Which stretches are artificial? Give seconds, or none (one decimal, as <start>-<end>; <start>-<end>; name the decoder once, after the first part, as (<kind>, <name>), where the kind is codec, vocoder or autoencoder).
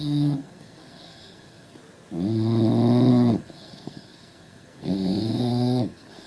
0.0-1.8 (codec, SNAC); 3.1-6.3